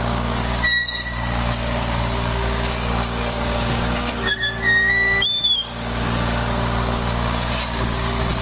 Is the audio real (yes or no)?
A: no